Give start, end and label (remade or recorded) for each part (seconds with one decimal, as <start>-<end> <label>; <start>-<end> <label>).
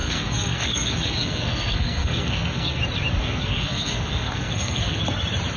0.0-2.8 remade; 2.8-3.2 recorded; 3.2-5.0 remade; 5.0-5.6 recorded